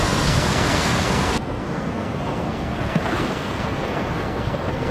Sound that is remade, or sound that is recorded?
remade